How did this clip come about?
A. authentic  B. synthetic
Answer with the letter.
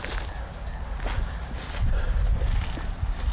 A